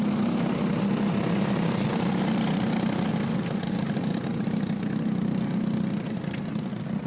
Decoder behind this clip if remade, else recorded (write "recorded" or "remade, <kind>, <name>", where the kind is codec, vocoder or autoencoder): recorded